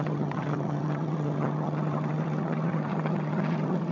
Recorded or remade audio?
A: remade